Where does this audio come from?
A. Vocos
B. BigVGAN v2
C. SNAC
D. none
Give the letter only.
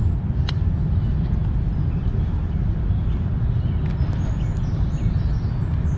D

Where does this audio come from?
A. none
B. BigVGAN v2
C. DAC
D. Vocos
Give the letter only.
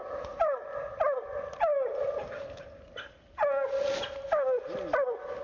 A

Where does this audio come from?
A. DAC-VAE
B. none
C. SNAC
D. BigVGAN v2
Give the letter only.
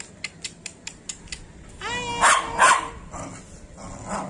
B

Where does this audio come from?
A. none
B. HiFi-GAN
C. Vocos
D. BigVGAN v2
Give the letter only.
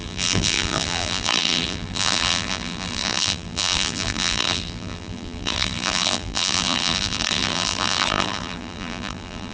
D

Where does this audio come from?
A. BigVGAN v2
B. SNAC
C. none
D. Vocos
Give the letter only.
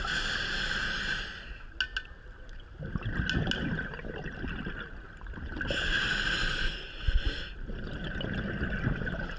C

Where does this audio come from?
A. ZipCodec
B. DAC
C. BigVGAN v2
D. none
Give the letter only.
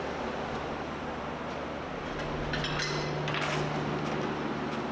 D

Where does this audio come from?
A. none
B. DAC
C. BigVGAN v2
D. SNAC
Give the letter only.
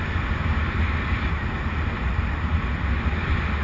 A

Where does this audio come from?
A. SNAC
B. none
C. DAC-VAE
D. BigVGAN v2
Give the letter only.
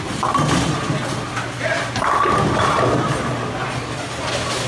B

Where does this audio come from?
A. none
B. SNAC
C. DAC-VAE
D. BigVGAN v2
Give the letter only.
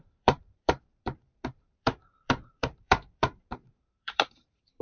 D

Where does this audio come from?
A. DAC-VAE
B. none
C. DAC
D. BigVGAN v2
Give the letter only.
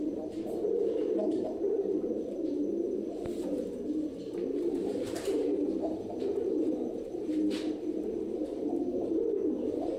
D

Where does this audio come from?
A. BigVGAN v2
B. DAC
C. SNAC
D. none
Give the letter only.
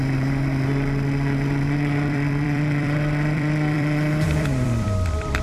A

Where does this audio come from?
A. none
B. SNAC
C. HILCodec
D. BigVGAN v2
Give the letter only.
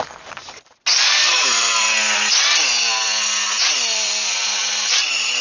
A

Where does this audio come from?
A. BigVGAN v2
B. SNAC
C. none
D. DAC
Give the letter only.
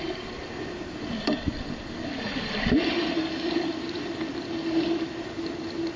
C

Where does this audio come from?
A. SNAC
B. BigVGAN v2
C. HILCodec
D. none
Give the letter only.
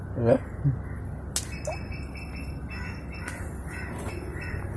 D